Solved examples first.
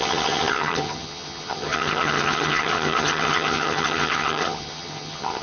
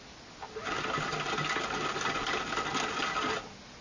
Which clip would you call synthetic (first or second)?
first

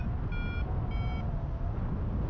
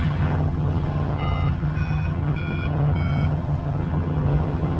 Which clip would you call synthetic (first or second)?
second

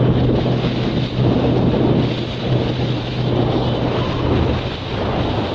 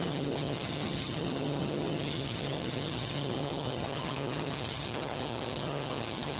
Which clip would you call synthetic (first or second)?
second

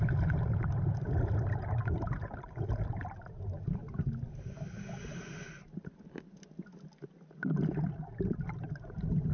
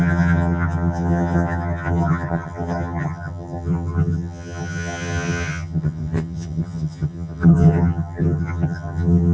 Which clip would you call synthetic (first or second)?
second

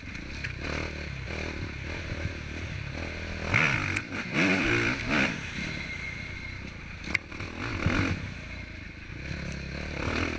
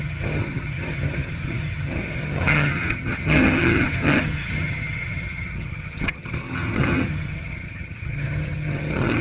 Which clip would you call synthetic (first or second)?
second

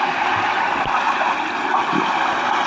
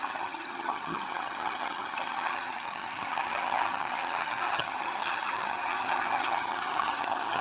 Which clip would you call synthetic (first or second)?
second